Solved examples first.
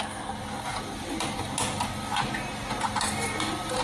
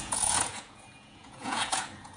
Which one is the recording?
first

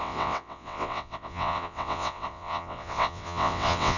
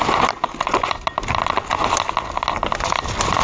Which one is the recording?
second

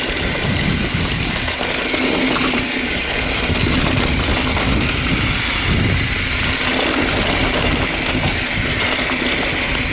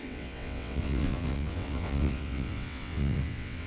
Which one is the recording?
first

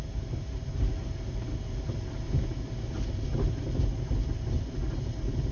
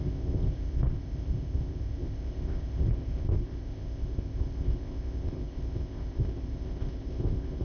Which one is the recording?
first